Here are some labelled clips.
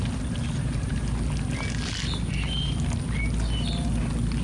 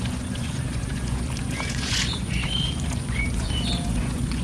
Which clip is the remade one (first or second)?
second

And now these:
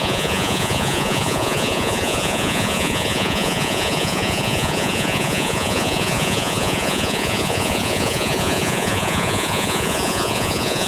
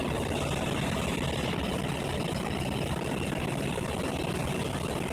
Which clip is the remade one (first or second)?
first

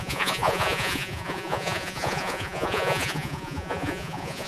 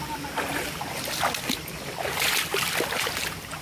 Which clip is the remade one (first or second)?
first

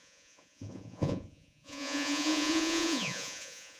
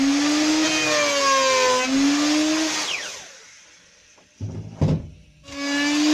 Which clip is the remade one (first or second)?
first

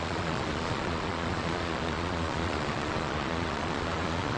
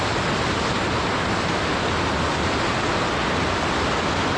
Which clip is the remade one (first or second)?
first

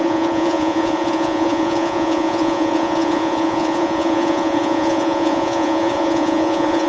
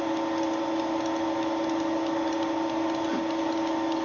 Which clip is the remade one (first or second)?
first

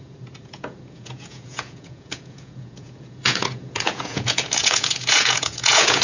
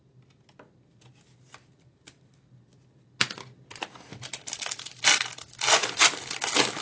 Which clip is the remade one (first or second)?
first